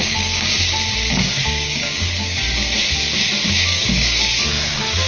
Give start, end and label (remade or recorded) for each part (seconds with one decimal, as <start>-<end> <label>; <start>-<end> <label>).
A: 0.0-0.5 remade; 0.5-1.1 recorded; 1.1-2.4 remade; 2.4-3.5 recorded; 3.5-5.1 remade